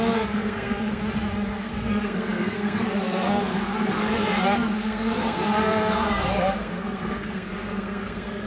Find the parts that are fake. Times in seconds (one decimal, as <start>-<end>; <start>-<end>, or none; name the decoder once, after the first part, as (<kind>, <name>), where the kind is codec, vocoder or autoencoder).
0.0-1.0 (codec, SNAC); 1.6-8.5